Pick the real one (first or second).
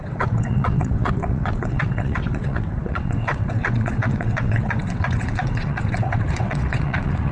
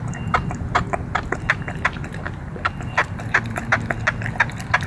second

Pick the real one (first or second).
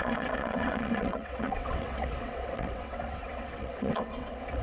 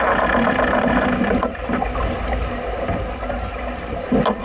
second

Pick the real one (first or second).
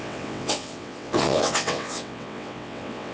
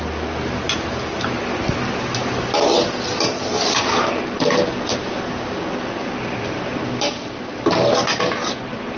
second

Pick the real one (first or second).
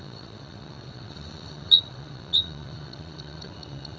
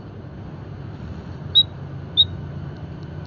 second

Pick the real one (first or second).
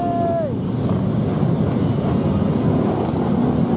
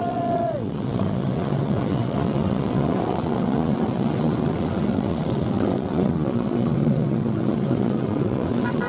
first